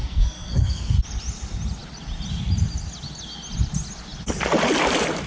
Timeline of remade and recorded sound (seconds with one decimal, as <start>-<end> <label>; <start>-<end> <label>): 0.0-1.0 remade; 1.0-5.3 recorded